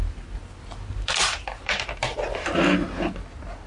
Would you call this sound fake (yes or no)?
no